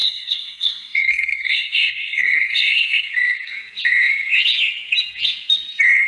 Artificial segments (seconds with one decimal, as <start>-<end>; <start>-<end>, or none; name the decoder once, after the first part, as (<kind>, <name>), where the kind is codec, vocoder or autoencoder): 0.0-3.1 (codec, SNAC)